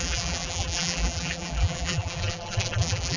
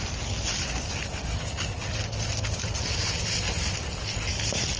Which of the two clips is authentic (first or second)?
second